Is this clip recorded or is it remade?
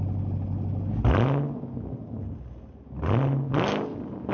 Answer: recorded